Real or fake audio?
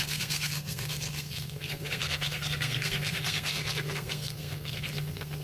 fake